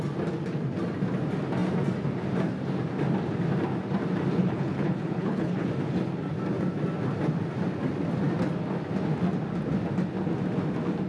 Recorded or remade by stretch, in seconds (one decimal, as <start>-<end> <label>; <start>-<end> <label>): 0.0-4.4 recorded; 4.4-5.7 remade; 5.7-11.1 recorded